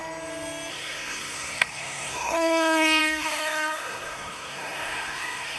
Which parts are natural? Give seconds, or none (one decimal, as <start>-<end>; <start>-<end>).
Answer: 0.0-0.7